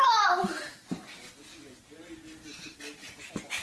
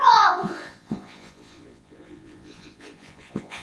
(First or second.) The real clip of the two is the first